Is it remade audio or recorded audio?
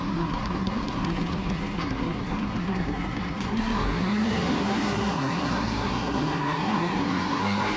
remade